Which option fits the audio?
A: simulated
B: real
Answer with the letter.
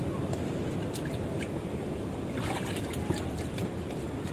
B